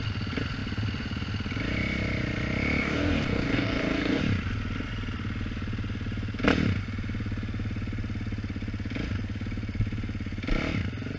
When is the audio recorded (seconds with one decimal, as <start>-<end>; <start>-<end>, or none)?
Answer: 0.0-2.8; 4.2-11.2